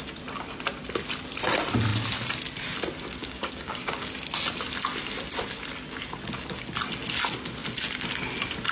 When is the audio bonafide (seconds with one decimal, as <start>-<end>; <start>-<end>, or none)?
0.0-3.2; 4.1-8.7